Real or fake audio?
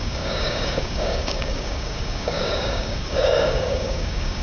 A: fake